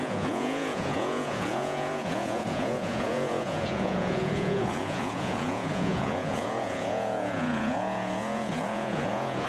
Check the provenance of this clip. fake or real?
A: fake